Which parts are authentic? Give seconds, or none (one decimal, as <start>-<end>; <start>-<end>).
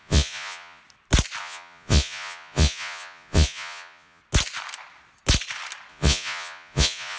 0.8-1.4; 4.2-5.9